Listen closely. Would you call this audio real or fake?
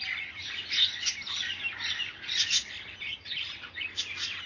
real